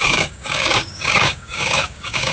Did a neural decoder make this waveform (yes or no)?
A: yes